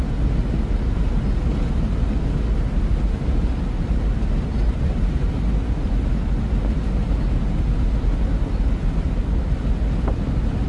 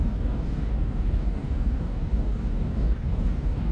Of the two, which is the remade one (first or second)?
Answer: second